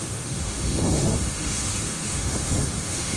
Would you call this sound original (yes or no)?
no